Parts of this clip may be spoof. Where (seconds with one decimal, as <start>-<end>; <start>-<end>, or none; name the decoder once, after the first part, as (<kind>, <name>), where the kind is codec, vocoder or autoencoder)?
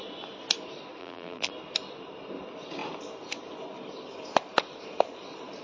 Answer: 1.0-1.5 (vocoder, BigVGAN v2)